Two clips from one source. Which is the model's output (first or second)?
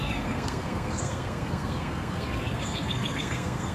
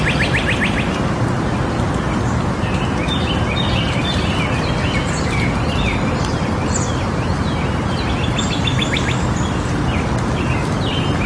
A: first